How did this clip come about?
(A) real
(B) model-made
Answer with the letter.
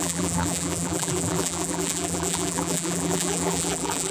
B